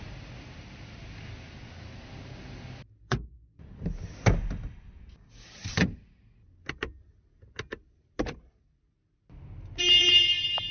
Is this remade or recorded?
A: recorded